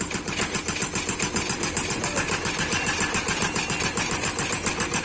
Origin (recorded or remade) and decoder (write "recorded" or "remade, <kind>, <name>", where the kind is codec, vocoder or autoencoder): recorded